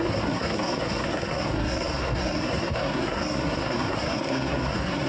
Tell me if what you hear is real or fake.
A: fake